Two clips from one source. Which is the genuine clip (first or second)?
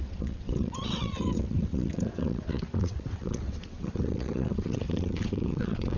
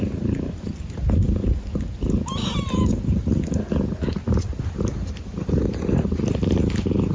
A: second